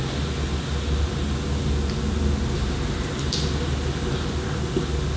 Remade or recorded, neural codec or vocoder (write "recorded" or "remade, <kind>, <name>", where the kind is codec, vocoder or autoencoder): recorded